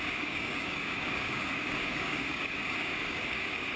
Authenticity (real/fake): fake